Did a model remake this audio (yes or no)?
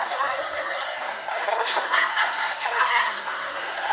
yes